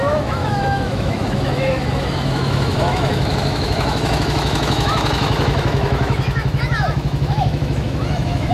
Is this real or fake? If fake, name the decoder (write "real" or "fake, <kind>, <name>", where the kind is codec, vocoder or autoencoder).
fake, autoencoder, DAC-VAE